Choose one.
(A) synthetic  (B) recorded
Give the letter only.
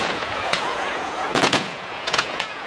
A